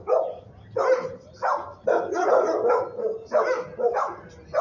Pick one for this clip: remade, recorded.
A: recorded